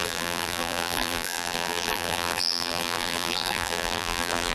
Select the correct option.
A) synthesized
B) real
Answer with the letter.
A